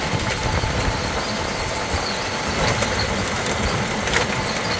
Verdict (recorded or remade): recorded